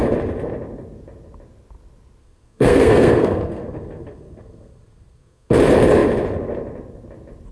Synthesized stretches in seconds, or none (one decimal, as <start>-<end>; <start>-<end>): 2.2-5.5